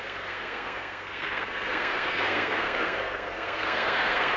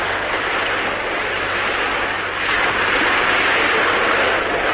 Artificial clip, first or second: first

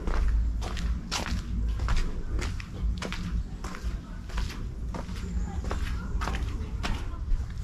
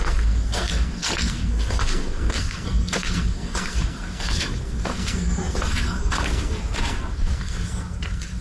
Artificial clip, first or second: second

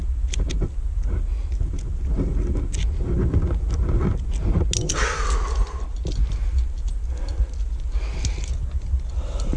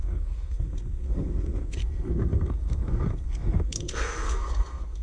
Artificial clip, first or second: second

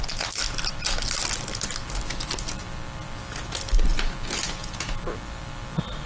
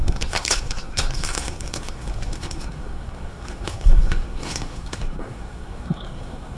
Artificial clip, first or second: second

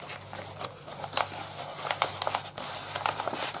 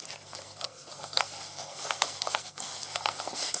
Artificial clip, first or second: second